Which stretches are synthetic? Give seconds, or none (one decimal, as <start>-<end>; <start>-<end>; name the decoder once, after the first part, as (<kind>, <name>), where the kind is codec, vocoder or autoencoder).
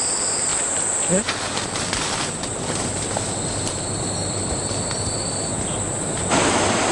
0.5-3.2 (vocoder, BigVGAN v2)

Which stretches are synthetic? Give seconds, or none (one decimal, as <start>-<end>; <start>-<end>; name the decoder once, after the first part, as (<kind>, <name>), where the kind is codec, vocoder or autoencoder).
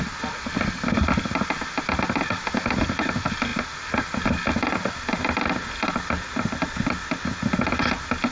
none